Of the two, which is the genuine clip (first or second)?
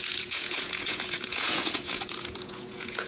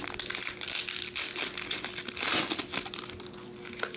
second